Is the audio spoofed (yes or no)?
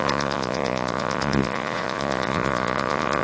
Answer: yes